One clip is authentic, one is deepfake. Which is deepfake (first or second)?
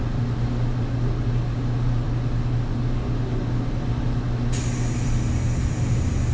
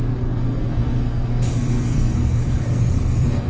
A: second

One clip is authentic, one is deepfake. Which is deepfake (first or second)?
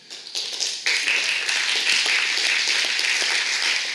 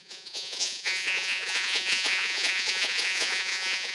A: second